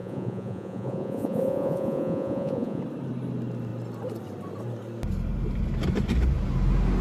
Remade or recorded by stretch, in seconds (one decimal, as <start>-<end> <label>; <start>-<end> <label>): 0.0-2.8 remade; 2.8-7.0 recorded